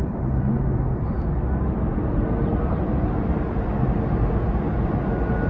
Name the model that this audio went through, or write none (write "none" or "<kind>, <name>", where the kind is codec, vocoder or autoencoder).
none